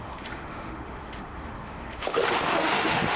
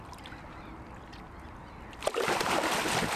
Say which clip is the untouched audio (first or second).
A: second